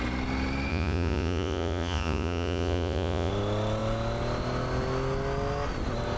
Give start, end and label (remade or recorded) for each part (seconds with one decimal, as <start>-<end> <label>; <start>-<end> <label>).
0.0-0.7 recorded; 0.7-3.3 remade; 3.3-6.2 recorded